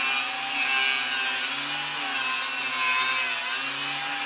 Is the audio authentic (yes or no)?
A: yes